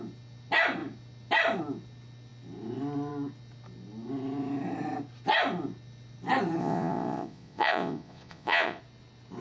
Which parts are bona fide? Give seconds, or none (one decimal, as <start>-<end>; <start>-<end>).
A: 0.0-6.6; 8.8-9.4